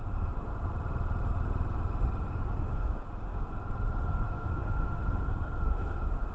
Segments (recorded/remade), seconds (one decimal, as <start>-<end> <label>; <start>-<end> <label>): 0.0-0.5 remade; 0.5-2.3 recorded; 2.3-3.5 remade; 3.5-4.1 recorded; 4.1-6.3 remade